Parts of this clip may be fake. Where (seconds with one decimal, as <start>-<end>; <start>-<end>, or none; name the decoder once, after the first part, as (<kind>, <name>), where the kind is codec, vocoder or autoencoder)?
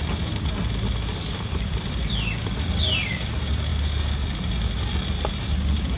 1.1-2.0 (vocoder, BigVGAN v2)